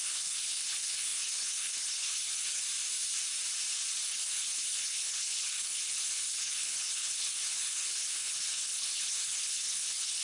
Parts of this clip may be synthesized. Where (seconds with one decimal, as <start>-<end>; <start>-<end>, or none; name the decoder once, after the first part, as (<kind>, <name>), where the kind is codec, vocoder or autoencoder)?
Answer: 0.0-2.6 (codec, HILCodec); 4.1-10.2